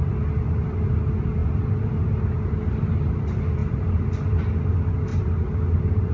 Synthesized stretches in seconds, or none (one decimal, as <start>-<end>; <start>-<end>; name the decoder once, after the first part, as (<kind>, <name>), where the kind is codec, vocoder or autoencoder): none